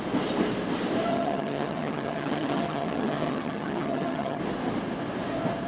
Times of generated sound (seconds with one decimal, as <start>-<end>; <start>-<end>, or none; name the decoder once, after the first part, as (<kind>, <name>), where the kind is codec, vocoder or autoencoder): 1.1-4.4 (vocoder, HiFi-GAN)